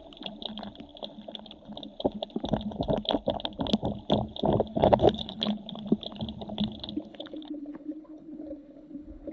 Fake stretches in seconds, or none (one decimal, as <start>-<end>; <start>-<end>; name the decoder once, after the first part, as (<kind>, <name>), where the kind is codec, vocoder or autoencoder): 4.7-5.6 (codec, HILCodec); 7.1-9.3